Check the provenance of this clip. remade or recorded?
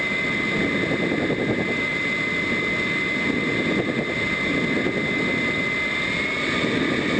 recorded